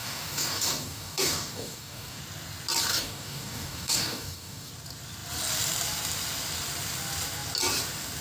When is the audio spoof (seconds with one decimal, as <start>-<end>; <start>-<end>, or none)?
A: 0.0-2.2; 2.9-4.7